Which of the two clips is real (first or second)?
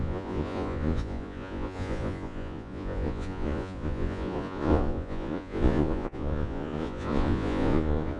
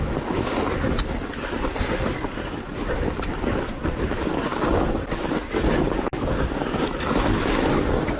second